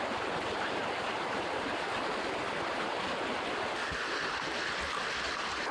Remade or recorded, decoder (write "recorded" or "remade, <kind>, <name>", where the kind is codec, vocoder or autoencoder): recorded